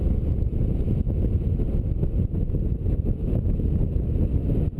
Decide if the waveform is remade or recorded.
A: recorded